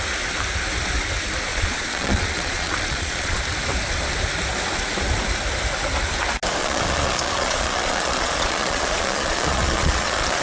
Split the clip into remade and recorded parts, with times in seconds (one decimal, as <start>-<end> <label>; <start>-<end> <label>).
0.0-1.5 recorded; 1.5-3.4 remade; 3.4-6.6 recorded; 6.6-10.4 remade